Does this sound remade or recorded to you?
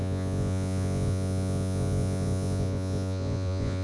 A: remade